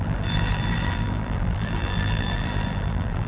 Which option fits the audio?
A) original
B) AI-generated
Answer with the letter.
B